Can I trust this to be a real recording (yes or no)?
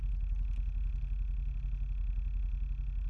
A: yes